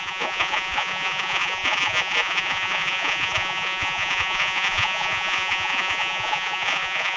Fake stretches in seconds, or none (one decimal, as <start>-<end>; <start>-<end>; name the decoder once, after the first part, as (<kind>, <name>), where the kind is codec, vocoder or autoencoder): 0.0-7.2 (vocoder, Vocos)